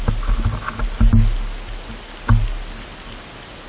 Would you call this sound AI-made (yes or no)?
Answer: no